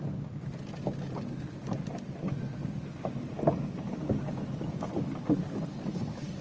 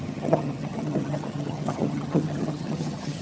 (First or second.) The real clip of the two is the first